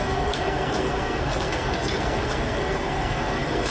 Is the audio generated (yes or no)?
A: yes